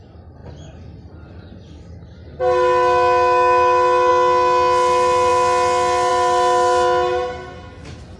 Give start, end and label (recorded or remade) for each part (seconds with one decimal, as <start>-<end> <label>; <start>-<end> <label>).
0.0-8.2 recorded